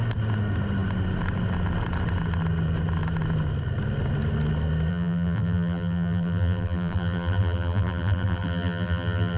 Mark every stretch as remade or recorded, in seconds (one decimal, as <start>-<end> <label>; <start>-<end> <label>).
0.0-4.9 recorded; 4.9-9.4 remade